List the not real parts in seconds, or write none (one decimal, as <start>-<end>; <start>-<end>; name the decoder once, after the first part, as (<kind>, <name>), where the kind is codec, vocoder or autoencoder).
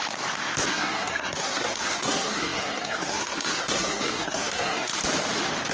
0.7-4.9 (codec, SNAC)